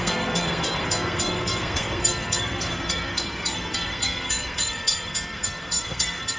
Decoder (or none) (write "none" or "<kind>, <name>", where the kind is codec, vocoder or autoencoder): codec, SNAC